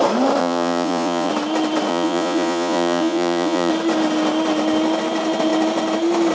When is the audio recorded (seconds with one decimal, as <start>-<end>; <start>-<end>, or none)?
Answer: 0.0-0.4; 1.3-1.9; 3.7-6.3